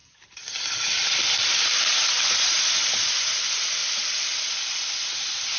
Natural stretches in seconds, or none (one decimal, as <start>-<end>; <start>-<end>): 3.4-3.8; 4.4-5.6